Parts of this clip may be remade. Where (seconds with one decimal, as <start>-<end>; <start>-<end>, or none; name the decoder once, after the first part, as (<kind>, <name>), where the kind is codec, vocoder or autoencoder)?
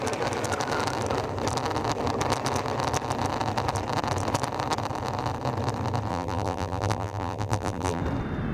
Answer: 6.1-8.0 (vocoder, BigVGAN v2)